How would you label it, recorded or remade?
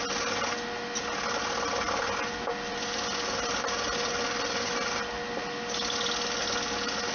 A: recorded